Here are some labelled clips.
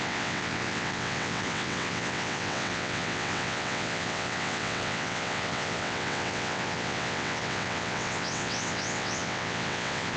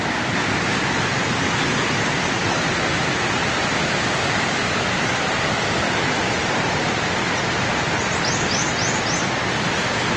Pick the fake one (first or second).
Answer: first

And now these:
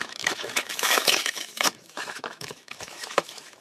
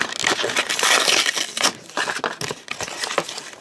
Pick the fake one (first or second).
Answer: first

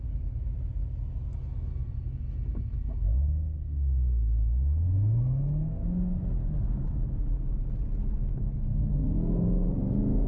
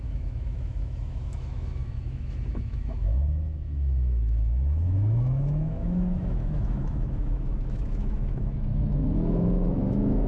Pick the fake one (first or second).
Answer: second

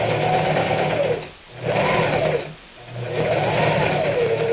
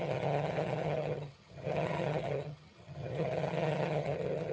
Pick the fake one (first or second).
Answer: second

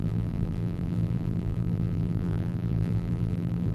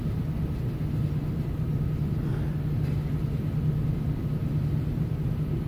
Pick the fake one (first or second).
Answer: first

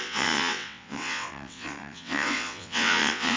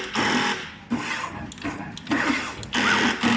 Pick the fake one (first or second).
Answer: first